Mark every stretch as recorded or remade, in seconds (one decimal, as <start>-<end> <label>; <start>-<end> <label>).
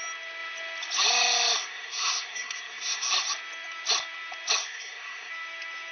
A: 0.0-1.6 recorded; 1.6-3.1 remade; 3.1-4.6 recorded; 4.6-5.3 remade; 5.3-5.9 recorded